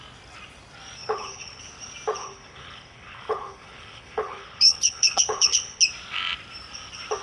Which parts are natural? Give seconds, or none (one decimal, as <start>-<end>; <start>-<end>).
0.0-1.0; 1.6-2.2; 5.8-7.2